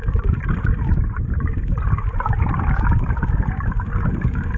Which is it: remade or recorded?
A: recorded